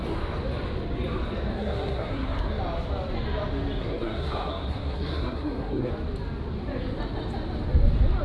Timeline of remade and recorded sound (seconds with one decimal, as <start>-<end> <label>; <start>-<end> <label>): 0.0-1.5 recorded; 1.5-2.6 remade; 2.6-3.8 recorded; 3.8-5.9 remade; 5.9-8.2 recorded